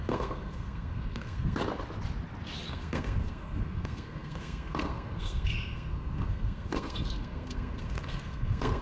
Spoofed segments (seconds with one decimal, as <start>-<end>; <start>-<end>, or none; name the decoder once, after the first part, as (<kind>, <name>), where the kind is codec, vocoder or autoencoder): 0.0-1.6 (codec, SNAC); 2.7-8.8